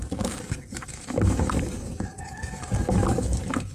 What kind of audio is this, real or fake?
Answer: fake